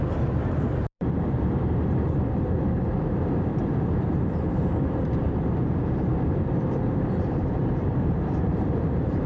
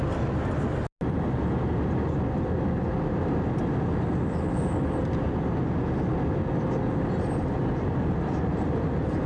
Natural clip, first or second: second